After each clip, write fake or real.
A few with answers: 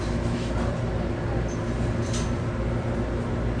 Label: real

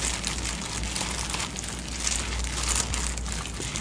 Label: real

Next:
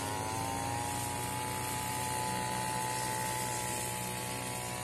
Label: real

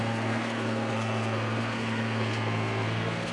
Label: fake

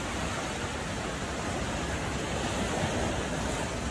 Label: real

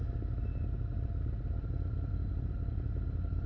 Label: real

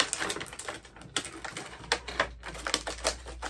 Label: real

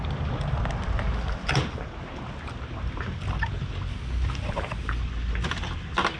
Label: real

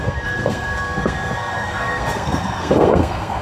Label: fake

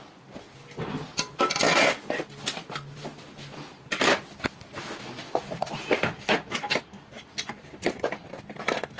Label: real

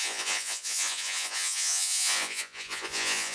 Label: fake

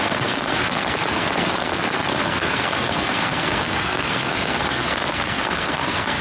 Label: fake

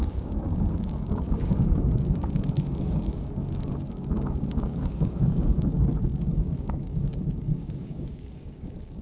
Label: fake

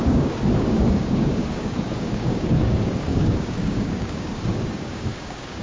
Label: fake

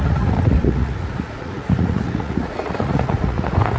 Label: fake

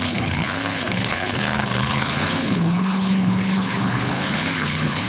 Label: fake